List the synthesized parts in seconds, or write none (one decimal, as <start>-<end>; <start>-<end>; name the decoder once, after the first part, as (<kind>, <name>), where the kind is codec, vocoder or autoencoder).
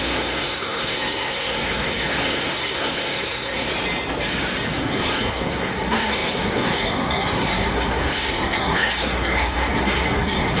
0.0-3.7 (codec, SNAC); 4.7-10.6